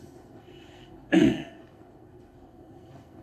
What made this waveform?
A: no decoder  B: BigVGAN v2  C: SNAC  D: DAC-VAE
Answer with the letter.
C